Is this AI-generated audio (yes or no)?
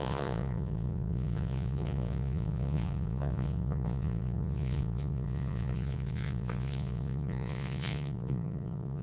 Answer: yes